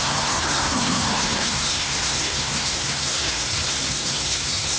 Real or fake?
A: fake